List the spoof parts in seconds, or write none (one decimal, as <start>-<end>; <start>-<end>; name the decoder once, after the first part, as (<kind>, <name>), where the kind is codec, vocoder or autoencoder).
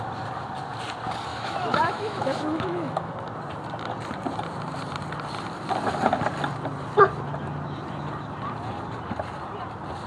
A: 1.3-3.1 (autoencoder, DAC-VAE)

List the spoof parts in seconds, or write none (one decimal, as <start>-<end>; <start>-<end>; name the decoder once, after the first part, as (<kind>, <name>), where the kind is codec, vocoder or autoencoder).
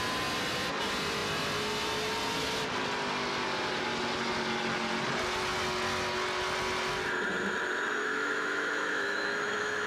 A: 8.0-9.9 (autoencoder, DAC-VAE)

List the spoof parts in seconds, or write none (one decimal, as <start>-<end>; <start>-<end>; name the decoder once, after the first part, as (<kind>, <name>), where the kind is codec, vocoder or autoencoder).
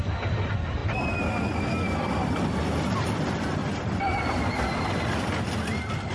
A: none